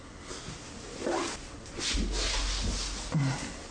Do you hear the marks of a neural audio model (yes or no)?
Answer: no